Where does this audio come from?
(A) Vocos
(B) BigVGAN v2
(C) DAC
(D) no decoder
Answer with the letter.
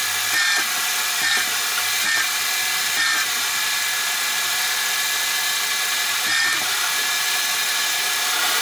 D